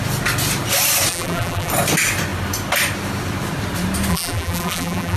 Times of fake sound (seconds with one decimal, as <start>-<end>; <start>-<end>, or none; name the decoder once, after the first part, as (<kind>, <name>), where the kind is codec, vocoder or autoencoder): 1.1-1.7 (vocoder, BigVGAN v2); 4.1-5.2